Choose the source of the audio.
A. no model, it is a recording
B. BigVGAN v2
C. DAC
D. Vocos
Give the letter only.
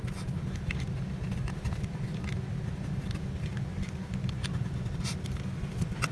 A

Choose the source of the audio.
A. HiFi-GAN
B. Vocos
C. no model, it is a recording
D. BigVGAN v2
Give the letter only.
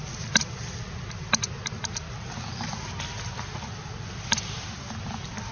C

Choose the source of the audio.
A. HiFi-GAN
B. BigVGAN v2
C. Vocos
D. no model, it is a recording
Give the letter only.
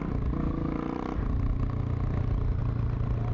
D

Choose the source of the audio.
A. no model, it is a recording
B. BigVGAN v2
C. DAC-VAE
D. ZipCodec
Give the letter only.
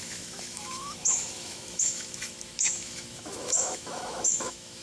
C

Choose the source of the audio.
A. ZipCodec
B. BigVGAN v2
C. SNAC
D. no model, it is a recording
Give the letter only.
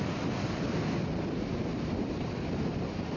D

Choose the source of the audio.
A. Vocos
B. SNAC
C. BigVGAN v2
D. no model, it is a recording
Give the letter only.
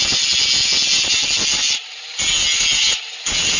D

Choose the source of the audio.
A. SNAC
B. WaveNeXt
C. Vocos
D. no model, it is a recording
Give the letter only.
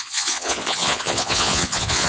C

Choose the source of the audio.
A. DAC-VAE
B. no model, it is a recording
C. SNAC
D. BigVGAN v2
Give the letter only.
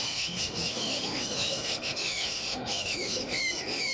A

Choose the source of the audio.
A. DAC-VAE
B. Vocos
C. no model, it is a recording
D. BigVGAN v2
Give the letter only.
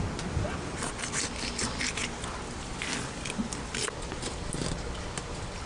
C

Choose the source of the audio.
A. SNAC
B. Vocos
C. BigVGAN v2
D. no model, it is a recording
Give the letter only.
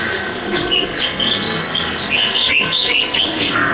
A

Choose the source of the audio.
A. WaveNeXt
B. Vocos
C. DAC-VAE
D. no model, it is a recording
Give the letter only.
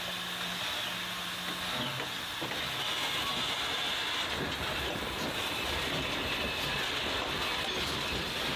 D